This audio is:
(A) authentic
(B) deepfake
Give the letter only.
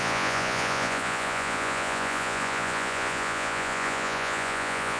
B